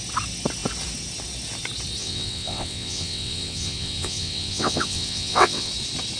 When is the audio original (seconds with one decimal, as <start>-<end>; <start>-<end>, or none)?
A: 0.0-2.0; 5.7-6.2

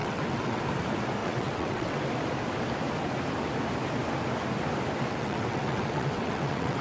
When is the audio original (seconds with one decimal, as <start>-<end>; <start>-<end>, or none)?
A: 0.6-1.2; 2.0-5.1

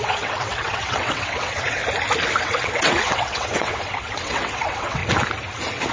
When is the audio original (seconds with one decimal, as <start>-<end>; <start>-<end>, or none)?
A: 1.8-2.4; 5.0-5.9

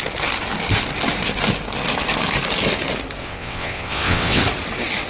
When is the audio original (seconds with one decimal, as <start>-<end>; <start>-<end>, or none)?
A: 0.0-3.2; 4.4-5.1

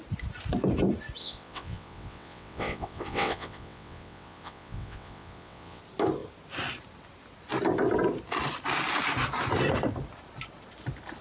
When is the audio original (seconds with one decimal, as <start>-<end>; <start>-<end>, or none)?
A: 0.0-1.2; 5.8-11.2

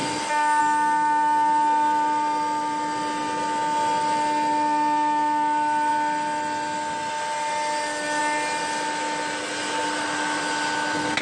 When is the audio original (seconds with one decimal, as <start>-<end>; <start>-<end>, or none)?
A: 0.0-11.2

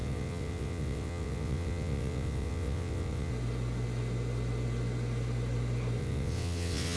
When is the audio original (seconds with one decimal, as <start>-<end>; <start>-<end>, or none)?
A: 3.3-6.0